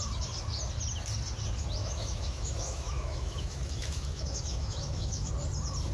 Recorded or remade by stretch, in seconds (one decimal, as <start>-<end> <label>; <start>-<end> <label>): 0.0-1.8 recorded; 1.8-5.3 remade; 5.3-5.9 recorded